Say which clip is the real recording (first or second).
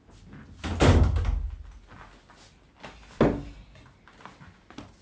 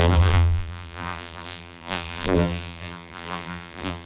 first